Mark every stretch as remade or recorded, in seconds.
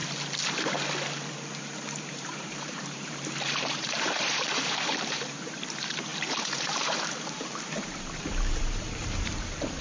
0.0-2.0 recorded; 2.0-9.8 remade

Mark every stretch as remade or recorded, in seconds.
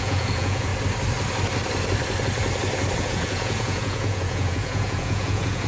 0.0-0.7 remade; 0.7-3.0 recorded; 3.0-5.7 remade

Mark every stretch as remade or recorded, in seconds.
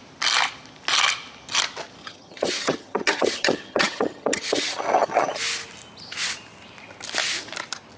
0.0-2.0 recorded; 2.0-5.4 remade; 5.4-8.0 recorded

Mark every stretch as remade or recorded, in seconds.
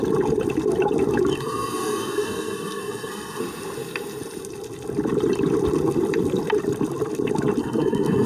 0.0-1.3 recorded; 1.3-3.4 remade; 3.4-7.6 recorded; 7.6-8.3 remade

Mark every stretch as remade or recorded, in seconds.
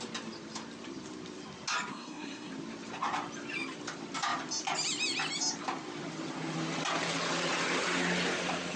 0.0-1.9 recorded; 1.9-2.5 remade; 2.5-8.8 recorded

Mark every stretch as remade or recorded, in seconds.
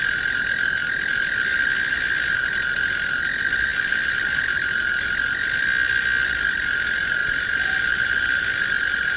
0.0-3.7 recorded; 3.7-4.4 remade; 4.4-7.2 recorded; 7.2-8.4 remade; 8.4-9.2 recorded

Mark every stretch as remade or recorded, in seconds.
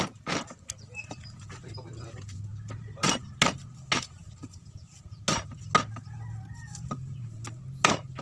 0.0-8.2 recorded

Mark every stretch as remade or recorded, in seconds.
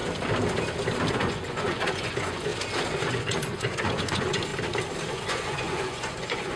0.0-1.1 recorded; 1.1-2.5 remade; 2.5-3.1 recorded; 3.1-4.5 remade; 4.5-5.1 recorded; 5.1-6.6 remade